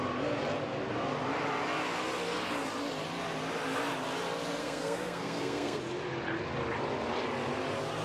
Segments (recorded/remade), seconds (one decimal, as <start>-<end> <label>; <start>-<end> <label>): 0.0-4.6 recorded; 4.6-5.8 remade; 5.8-8.0 recorded